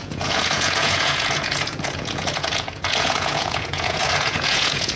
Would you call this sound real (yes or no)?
no